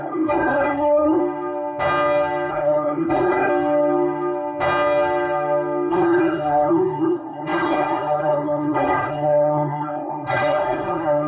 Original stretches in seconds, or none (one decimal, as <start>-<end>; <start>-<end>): 1.2-2.5; 3.5-5.9